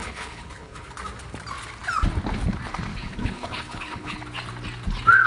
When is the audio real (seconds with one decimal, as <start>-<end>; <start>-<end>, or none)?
0.9-2.9; 4.2-5.3